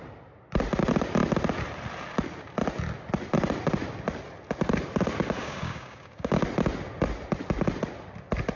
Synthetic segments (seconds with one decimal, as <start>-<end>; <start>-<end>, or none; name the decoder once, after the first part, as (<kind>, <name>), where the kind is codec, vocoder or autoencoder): 5.4-6.4 (codec, DAC)